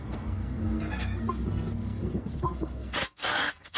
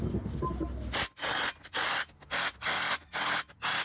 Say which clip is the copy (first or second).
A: first